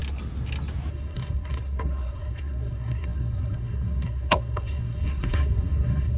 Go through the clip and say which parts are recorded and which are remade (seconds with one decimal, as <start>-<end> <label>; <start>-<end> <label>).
0.0-0.9 recorded; 0.9-6.2 remade